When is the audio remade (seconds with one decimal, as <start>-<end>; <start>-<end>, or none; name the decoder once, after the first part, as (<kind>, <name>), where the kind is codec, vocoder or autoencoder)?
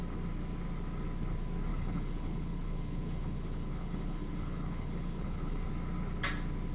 1.7-5.7 (codec, HILCodec)